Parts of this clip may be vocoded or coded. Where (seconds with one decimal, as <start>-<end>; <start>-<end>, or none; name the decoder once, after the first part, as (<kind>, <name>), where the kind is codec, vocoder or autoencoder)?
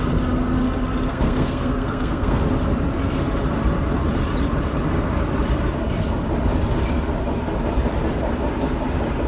1.1-2.4 (codec, SNAC)